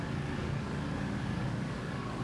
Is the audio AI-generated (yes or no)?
yes